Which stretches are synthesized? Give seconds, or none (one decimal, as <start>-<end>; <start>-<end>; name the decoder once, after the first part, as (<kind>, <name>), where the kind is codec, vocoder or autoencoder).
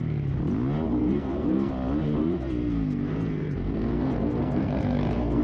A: 1.0-1.7 (codec, SNAC); 2.2-5.4